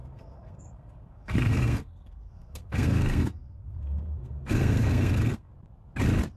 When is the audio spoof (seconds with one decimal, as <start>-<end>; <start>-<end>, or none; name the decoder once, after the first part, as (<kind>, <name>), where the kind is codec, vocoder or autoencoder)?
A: 0.0-5.5 (codec, SNAC)